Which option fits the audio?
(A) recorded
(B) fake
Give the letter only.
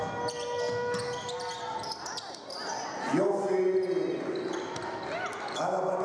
A